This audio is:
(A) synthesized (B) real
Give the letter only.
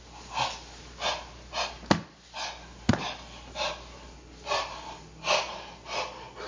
B